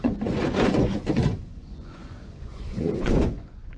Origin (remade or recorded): remade